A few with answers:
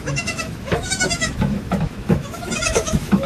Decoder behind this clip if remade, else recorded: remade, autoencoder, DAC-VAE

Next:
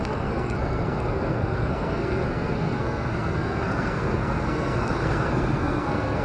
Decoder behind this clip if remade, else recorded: remade, codec, SNAC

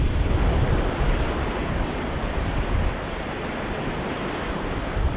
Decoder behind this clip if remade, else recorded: recorded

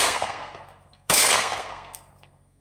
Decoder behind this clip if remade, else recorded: remade, codec, SNAC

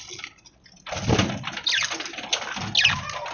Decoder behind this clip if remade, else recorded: recorded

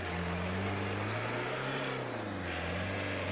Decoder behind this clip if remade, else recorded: recorded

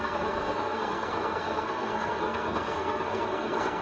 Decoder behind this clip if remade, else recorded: remade, codec, SNAC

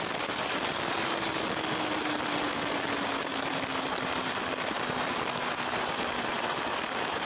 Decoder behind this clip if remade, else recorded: recorded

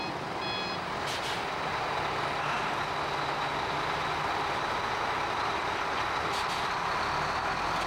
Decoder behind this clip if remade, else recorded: recorded